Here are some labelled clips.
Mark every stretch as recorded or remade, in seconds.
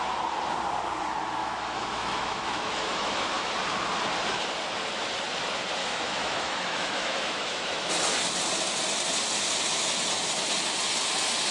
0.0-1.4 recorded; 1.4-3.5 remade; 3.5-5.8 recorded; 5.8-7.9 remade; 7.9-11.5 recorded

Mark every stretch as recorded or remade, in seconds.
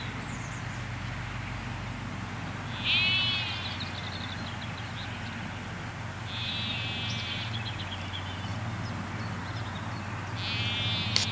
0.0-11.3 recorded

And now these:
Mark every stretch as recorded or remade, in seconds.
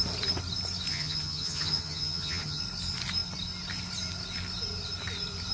0.0-0.9 recorded; 0.9-2.6 remade; 2.6-5.5 recorded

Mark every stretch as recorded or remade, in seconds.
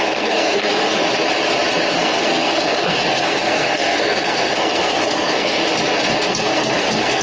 0.0-1.0 remade; 1.0-1.9 recorded; 1.9-5.6 remade; 5.6-6.3 recorded; 6.3-7.2 remade